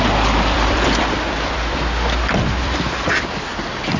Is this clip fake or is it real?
fake